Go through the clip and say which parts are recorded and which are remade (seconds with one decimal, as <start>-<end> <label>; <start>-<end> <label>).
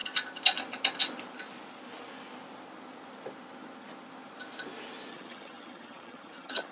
0.0-5.1 recorded; 5.1-6.7 remade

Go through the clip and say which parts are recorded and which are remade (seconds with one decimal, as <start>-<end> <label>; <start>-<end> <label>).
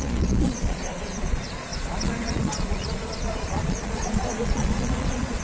0.0-5.4 remade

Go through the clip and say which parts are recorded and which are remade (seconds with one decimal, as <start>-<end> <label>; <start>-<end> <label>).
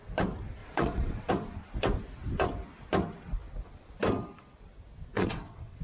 0.0-0.6 recorded; 0.6-1.3 remade; 1.3-5.1 recorded; 5.1-5.8 remade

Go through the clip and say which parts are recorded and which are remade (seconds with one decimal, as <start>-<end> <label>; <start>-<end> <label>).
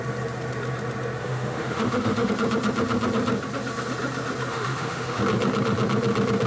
0.0-1.2 recorded; 1.2-2.3 remade; 2.3-4.5 recorded; 4.5-5.2 remade; 5.2-6.5 recorded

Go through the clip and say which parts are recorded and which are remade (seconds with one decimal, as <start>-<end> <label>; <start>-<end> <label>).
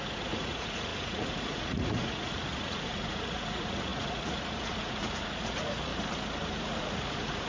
0.0-5.9 remade; 5.9-6.6 recorded; 6.6-7.5 remade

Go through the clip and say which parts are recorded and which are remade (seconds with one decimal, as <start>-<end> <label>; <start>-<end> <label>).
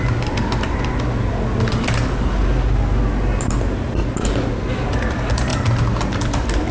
0.0-6.7 recorded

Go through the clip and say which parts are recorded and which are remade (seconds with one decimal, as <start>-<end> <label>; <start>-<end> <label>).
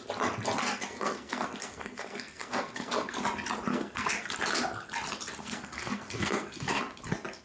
0.0-0.6 recorded; 0.6-3.2 remade; 3.2-3.7 recorded; 3.7-4.3 remade; 4.3-5.4 recorded; 5.4-6.8 remade; 6.8-7.4 recorded